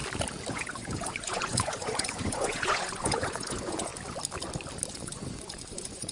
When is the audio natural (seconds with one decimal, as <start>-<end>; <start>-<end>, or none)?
0.0-0.5; 3.9-4.9